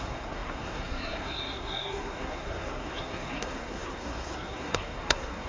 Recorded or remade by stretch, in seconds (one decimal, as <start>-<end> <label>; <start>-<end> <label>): 0.0-5.5 remade